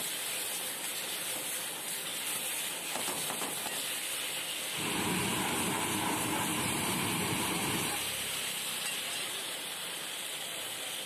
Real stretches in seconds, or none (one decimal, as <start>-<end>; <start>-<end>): 0.0-6.5; 10.1-11.1